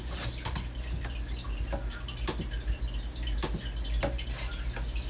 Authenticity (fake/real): real